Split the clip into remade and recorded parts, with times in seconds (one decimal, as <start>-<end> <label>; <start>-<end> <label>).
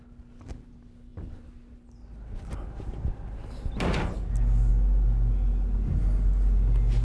0.0-7.0 recorded